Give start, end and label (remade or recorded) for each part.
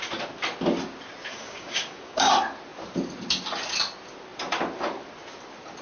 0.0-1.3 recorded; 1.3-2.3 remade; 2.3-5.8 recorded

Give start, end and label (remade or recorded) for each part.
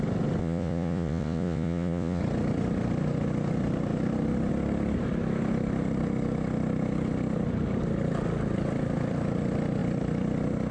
0.0-0.4 recorded; 0.4-2.2 remade; 2.2-10.7 recorded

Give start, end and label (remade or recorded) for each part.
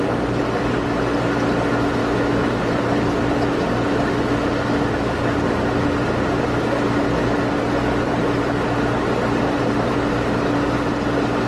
0.0-2.0 recorded; 2.0-2.6 remade; 2.6-11.5 recorded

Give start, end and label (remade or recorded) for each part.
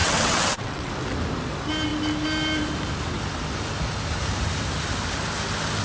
0.0-0.9 remade; 0.9-5.8 recorded